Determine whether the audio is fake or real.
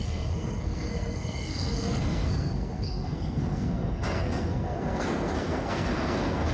fake